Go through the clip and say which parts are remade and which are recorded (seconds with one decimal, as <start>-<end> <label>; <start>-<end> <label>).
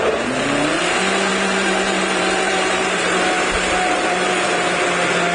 0.0-1.3 recorded; 1.3-4.5 remade; 4.5-5.3 recorded